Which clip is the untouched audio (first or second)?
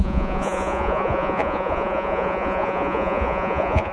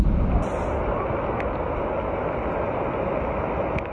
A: second